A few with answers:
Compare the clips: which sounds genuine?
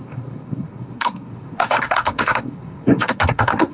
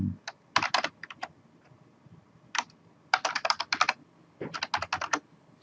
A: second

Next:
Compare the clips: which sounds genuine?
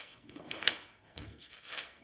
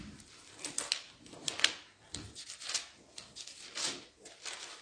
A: second